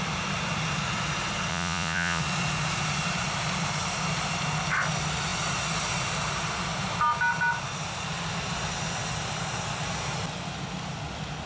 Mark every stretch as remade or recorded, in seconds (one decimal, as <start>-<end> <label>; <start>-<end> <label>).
0.0-1.5 recorded; 1.5-2.2 remade; 2.2-11.5 recorded

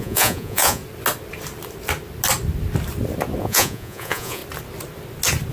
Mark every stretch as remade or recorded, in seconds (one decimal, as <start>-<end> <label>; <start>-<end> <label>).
0.0-0.8 remade; 0.8-3.4 recorded; 3.4-4.4 remade; 4.4-5.5 recorded

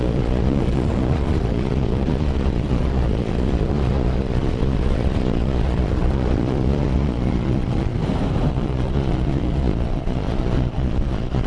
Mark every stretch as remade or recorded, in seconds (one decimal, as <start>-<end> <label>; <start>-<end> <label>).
0.0-7.9 remade; 7.9-8.5 recorded; 8.5-11.5 remade

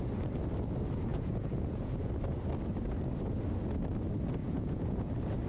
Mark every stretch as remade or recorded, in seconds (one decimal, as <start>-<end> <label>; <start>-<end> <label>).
0.0-1.1 recorded; 1.1-2.1 remade; 2.1-4.4 recorded; 4.4-5.1 remade; 5.1-5.5 recorded

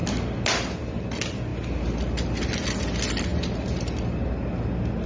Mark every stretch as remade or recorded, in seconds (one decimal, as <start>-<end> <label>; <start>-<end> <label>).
0.0-5.1 recorded

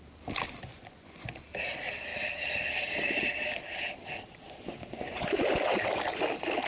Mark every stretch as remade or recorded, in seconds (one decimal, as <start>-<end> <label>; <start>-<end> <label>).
0.0-0.7 recorded; 0.7-1.4 remade; 1.4-4.8 recorded; 4.8-5.8 remade; 5.8-6.7 recorded